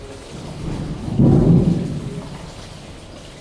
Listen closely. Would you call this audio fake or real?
real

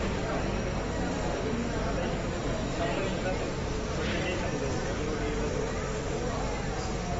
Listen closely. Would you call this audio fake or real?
real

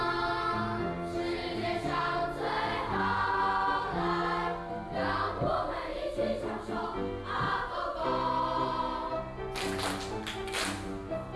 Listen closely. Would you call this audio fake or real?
real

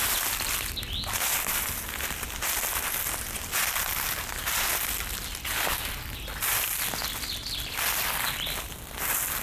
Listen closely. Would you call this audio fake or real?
real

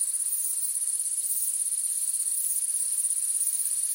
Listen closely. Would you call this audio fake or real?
fake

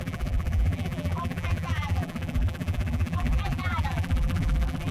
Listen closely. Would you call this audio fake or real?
fake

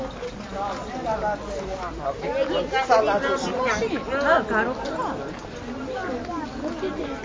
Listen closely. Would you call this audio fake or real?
real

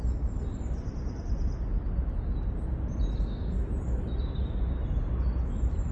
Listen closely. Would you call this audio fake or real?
real